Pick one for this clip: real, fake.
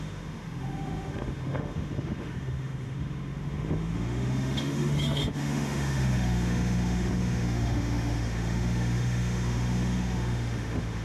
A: fake